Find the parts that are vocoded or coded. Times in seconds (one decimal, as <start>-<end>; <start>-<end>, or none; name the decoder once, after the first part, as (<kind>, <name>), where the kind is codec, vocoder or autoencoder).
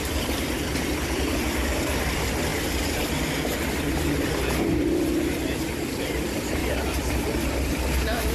0.0-2.5 (vocoder, BigVGAN v2); 4.6-6.6; 7.1-8.3